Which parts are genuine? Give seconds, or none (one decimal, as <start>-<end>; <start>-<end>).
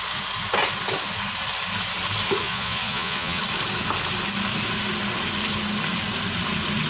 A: 0.0-2.4; 3.4-6.9